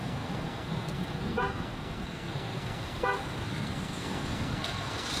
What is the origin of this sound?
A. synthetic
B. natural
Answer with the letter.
A